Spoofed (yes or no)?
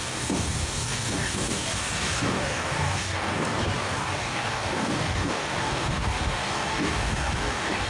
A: yes